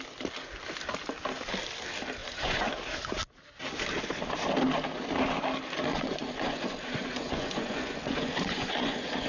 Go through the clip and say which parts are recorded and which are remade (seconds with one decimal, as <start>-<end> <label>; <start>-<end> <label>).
0.0-2.2 recorded; 2.2-2.7 remade; 2.7-5.9 recorded; 5.9-9.3 remade